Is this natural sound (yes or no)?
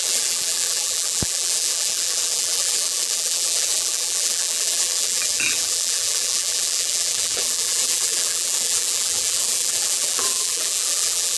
no